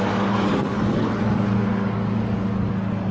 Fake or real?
fake